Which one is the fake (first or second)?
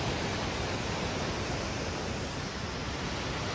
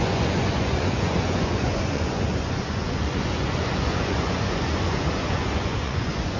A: second